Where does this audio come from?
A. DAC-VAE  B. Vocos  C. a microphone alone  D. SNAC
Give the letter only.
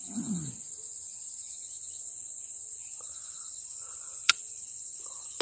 C